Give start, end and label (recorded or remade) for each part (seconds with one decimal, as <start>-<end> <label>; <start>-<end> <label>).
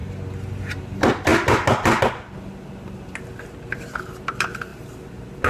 0.0-0.8 recorded; 0.8-1.3 remade; 1.3-3.4 recorded; 3.4-4.7 remade; 4.7-5.5 recorded